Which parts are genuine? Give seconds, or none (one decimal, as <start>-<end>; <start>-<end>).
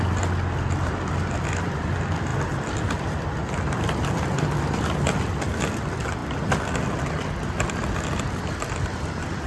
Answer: 0.0-9.5